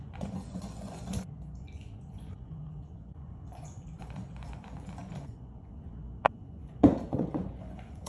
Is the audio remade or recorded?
remade